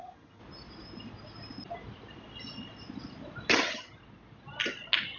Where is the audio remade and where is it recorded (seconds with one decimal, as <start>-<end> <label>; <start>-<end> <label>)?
0.0-0.4 remade; 0.4-3.5 recorded; 3.5-4.0 remade; 4.0-5.2 recorded